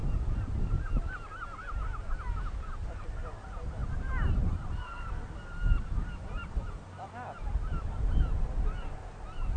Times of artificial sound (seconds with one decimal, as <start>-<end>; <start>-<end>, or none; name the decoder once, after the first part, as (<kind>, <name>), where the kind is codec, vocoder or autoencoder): 3.8-8.0 (vocoder, BigVGAN v2)